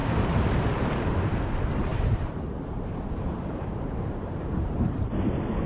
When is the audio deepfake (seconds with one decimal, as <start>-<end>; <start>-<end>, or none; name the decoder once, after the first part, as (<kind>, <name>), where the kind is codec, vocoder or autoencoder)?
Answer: 0.0-0.5 (vocoder, BigVGAN v2); 1.9-5.2